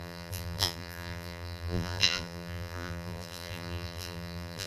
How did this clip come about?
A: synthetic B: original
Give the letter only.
A